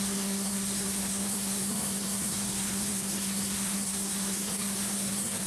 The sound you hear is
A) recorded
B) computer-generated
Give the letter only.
B